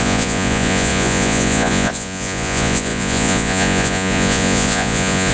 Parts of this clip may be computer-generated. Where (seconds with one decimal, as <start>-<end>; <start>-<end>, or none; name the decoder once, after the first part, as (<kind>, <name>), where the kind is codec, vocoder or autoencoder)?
0.0-5.3 (vocoder, Vocos)